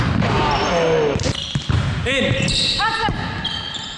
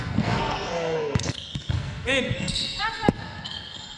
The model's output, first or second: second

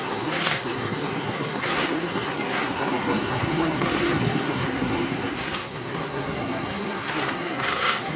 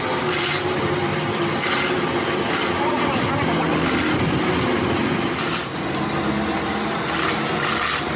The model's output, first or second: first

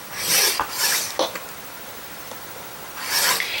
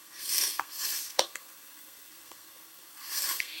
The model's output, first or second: second